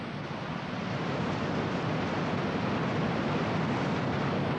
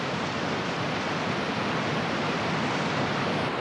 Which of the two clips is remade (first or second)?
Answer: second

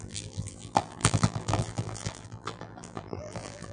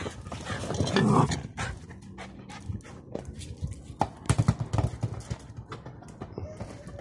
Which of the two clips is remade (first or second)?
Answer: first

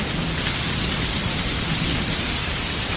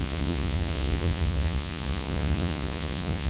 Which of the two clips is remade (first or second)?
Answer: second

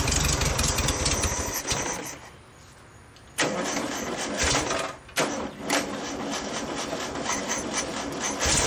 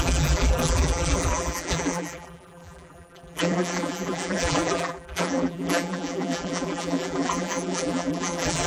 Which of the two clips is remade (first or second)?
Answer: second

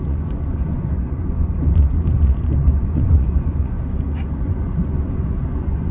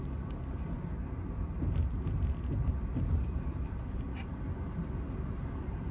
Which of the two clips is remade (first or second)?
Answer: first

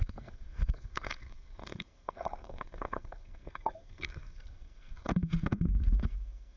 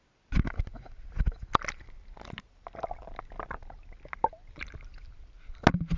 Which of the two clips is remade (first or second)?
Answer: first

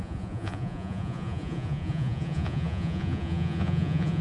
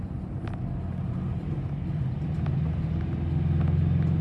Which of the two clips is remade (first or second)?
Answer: first